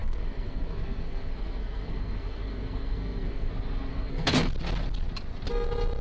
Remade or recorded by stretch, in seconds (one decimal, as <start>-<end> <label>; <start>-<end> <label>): 0.0-3.5 remade; 3.5-3.9 recorded; 3.9-4.5 remade; 4.5-6.0 recorded